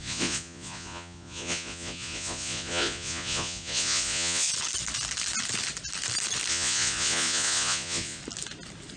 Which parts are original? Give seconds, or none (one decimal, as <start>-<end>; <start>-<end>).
4.5-6.5; 8.2-9.0